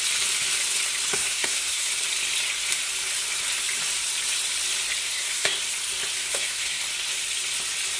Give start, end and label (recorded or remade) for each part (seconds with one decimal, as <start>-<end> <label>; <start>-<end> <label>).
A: 0.0-1.1 recorded; 1.1-1.9 remade; 1.9-5.0 recorded; 5.0-5.6 remade; 5.6-6.2 recorded; 6.2-6.8 remade; 6.8-8.0 recorded